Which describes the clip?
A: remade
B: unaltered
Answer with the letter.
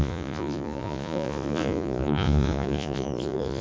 A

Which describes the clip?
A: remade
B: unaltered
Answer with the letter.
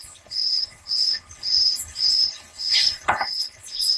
A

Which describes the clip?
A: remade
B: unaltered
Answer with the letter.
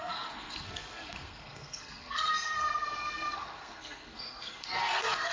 A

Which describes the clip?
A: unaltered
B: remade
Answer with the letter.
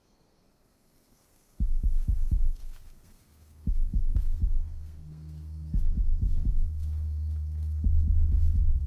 B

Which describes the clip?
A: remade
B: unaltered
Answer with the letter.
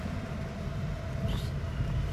B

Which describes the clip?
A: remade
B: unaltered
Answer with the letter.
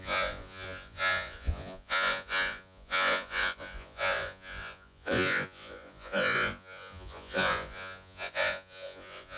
A